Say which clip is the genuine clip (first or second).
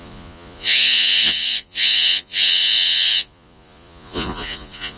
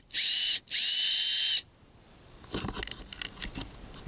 second